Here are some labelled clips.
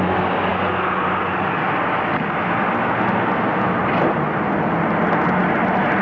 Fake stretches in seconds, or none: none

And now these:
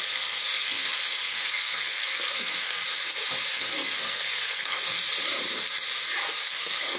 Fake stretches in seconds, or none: 0.0-2.8 (codec, SNAC); 3.5-5.0; 6.4-7.0

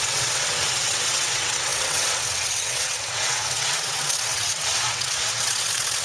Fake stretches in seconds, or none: 0.0-6.0 (vocoder, WaveNeXt)

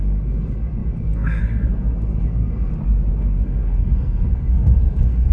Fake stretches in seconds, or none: 0.0-2.7 (codec, SNAC); 3.2-5.3

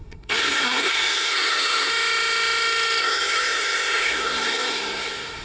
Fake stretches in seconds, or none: 0.0-1.9 (codec, SNAC); 3.0-5.4

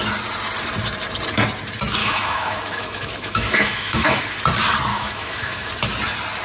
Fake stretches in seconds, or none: 2.0-4.2 (autoencoder, DAC-VAE); 4.9-5.7

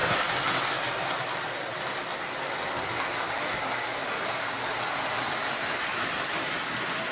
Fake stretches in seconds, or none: none